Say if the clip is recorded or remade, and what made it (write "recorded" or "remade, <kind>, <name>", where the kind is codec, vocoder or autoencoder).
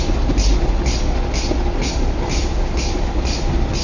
recorded